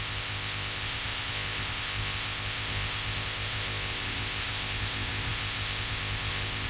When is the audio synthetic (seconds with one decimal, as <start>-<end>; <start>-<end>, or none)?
0.0-6.7